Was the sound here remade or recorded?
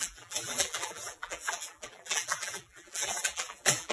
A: remade